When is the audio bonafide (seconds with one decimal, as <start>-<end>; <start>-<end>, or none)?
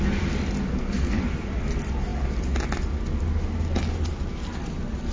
0.0-0.7; 1.2-5.1